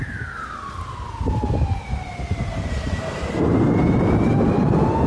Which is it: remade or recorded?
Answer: recorded